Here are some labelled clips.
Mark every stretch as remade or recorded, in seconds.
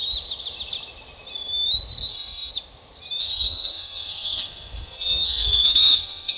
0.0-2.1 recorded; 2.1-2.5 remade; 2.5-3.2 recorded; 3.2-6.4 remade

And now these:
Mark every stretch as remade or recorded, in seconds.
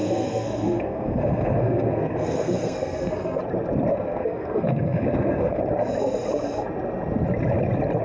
0.0-3.4 remade; 3.4-3.9 recorded; 3.9-5.6 remade; 5.6-8.0 recorded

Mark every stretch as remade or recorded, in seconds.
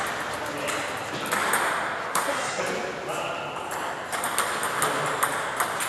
0.0-2.1 recorded; 2.1-2.6 remade; 2.6-5.9 recorded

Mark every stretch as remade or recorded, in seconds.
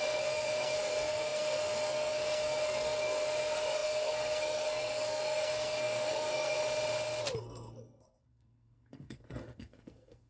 0.0-6.6 remade; 6.6-7.4 recorded; 7.4-10.3 remade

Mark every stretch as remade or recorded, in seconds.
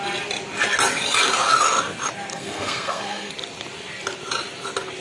0.0-2.3 recorded; 2.3-3.3 remade; 3.3-5.0 recorded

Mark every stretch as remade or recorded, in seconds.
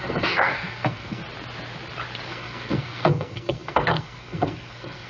0.0-1.2 remade; 1.2-2.3 recorded; 2.3-5.1 remade